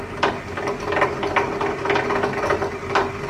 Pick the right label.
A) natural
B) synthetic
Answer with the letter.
A